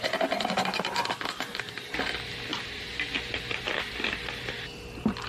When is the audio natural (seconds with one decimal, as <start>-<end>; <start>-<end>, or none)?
0.0-5.3